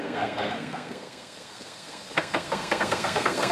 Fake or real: fake